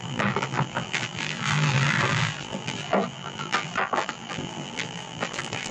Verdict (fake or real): fake